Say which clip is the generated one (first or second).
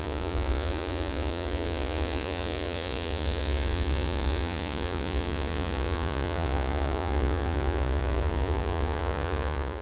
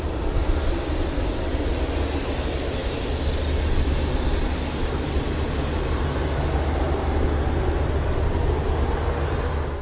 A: first